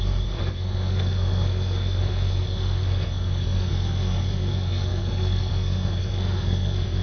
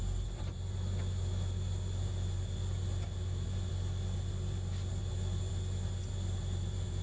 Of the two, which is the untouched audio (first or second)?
second